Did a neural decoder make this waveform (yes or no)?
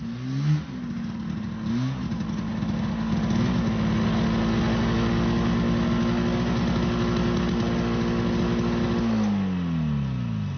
no